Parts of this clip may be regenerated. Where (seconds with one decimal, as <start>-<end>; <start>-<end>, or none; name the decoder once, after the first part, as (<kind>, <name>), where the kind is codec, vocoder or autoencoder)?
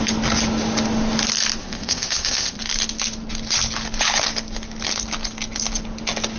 1.6-2.6 (codec, ZipCodec)